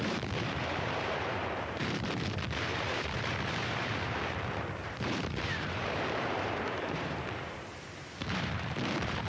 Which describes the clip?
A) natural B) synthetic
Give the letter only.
B